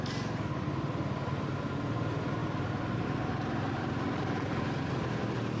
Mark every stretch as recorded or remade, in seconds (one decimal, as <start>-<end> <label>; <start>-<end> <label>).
0.0-5.6 recorded